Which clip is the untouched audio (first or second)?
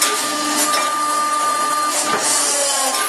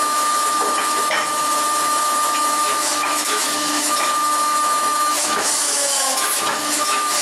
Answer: first